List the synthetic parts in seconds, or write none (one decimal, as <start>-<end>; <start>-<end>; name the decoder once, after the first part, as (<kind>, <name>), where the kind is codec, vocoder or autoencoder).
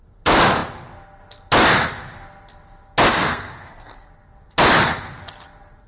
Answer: 3.1-4.1 (codec, SNAC)